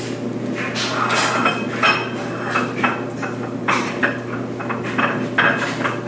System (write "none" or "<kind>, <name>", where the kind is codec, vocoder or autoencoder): none